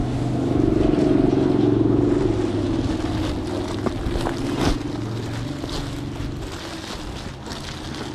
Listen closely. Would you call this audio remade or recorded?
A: recorded